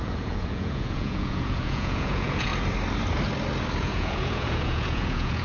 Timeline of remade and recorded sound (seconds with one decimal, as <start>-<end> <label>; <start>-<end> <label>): 0.0-2.5 remade; 2.5-3.8 recorded; 3.8-5.4 remade